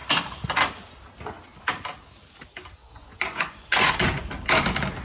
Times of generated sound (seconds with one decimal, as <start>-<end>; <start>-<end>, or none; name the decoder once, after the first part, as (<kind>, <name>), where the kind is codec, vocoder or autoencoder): 2.8-4.2 (vocoder, Vocos)